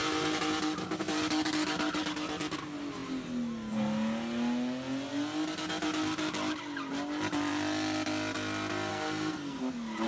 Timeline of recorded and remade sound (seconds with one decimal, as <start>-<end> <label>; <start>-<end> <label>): 0.0-8.9 recorded; 8.9-9.6 remade; 9.6-10.1 recorded